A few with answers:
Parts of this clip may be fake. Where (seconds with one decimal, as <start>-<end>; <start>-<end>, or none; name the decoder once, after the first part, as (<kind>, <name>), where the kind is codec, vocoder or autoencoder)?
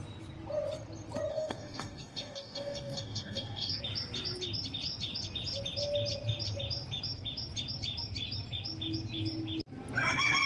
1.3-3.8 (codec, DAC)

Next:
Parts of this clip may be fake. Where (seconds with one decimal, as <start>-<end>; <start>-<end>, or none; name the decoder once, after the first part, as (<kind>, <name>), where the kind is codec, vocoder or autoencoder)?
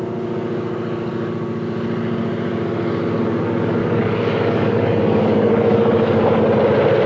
3.8-6.4 (codec, DAC)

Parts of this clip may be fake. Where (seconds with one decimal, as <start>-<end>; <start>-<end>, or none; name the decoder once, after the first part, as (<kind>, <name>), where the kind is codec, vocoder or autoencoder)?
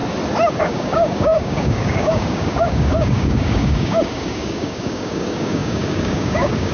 0.6-6.7 (codec, DAC)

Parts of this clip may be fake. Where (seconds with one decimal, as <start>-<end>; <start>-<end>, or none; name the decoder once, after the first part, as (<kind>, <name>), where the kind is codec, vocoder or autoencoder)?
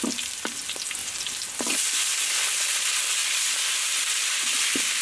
none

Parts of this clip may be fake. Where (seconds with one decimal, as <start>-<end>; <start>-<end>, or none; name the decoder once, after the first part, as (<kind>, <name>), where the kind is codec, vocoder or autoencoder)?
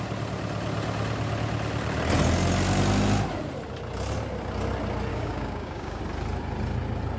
5.1-6.0 (codec, DAC)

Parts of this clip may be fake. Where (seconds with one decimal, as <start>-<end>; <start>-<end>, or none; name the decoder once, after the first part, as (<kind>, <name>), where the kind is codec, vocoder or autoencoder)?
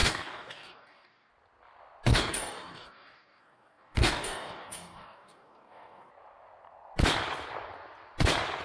0.0-1.3 (codec, DAC); 2.1-6.1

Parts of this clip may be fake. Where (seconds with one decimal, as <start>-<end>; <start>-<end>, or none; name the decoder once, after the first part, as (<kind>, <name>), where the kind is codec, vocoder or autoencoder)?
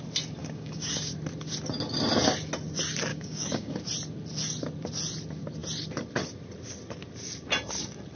0.4-1.1 (codec, DAC); 3.1-3.8